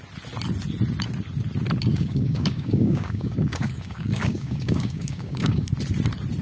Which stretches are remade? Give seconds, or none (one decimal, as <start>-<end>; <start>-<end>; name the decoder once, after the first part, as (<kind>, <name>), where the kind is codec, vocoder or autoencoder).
1.9-5.7 (codec, DAC)